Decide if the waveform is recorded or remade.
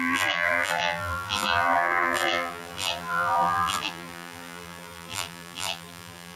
remade